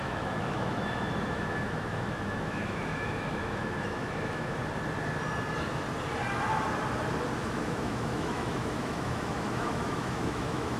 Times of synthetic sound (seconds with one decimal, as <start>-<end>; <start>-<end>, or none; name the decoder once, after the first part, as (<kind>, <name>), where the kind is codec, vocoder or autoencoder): 0.0-4.6 (autoencoder, DAC-VAE); 7.4-10.8